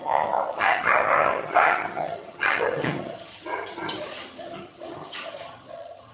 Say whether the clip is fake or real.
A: fake